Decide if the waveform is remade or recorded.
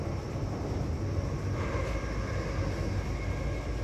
recorded